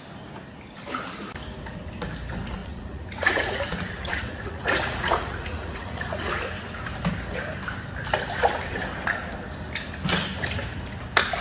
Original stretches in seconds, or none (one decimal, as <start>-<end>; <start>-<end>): 0.0-2.6; 6.4-11.4